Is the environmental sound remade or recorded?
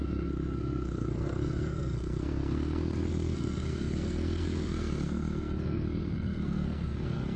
remade